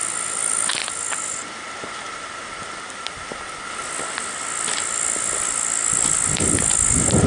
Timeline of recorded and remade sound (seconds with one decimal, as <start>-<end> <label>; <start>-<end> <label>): 0.0-7.3 recorded